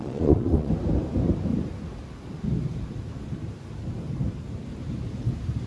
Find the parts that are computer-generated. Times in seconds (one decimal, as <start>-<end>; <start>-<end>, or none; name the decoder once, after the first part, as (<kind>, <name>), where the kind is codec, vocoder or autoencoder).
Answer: 0.0-0.7 (vocoder, Vocos)